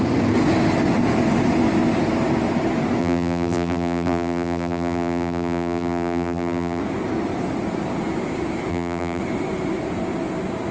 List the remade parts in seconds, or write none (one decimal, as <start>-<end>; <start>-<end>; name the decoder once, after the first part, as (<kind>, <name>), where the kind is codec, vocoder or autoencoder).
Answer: 3.0-6.8 (vocoder, BigVGAN v2); 8.7-9.2